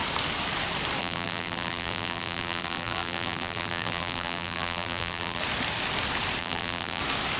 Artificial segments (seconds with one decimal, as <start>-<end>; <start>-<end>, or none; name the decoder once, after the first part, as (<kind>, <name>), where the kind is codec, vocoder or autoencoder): 1.0-5.4 (vocoder, BigVGAN v2); 6.4-7.0

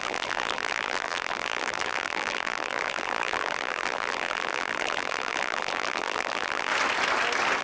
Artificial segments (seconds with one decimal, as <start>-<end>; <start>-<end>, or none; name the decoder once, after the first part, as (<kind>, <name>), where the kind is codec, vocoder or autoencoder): 0.0-6.7 (vocoder, BigVGAN v2)

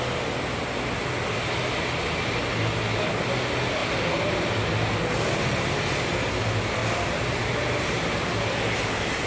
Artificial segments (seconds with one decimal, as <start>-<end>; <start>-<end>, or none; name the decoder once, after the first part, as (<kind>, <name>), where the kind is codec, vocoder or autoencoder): 6.8-8.6 (vocoder, BigVGAN v2)

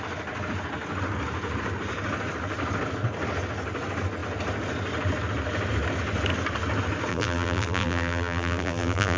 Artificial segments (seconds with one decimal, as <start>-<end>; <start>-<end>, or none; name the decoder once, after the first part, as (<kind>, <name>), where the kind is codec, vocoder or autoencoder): 7.1-9.2 (vocoder, BigVGAN v2)

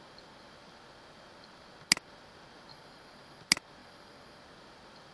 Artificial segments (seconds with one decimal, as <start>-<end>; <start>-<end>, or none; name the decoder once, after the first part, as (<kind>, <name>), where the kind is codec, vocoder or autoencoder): 2.7-3.4 (vocoder, BigVGAN v2); 3.8-4.4

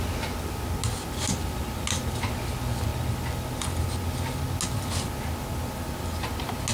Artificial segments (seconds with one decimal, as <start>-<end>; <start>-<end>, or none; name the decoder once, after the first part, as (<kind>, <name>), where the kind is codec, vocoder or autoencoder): none